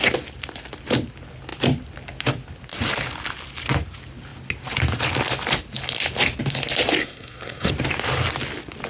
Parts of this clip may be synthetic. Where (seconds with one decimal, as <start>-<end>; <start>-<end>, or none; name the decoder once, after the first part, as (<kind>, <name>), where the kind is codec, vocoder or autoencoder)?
7.0-7.7 (codec, SNAC)